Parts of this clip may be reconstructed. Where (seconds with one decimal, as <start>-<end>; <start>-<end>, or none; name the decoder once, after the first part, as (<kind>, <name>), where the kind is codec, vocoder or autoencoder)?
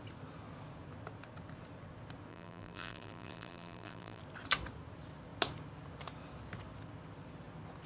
2.3-4.2 (vocoder, BigVGAN v2)